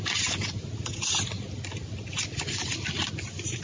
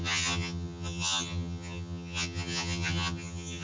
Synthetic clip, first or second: second